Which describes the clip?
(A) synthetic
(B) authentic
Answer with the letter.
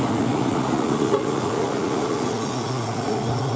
A